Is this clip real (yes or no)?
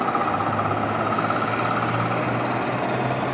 yes